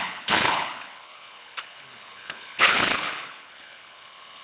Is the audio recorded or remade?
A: remade